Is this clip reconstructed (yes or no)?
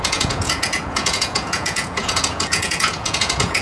yes